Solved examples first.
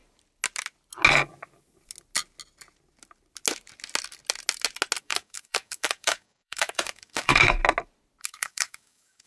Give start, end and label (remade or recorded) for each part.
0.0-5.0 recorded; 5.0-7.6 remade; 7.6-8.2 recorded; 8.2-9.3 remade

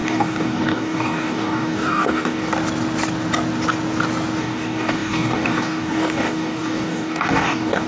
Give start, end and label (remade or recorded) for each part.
0.0-2.5 remade; 2.5-4.4 recorded; 4.4-7.9 remade

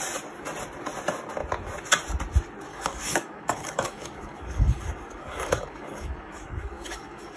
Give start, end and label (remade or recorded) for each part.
0.0-2.7 recorded; 2.7-7.4 remade

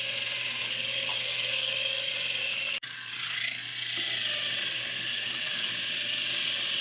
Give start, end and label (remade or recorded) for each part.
0.0-0.6 recorded; 0.6-2.1 remade; 2.1-2.5 recorded; 2.5-3.1 remade; 3.1-5.1 recorded; 5.1-5.7 remade; 5.7-6.8 recorded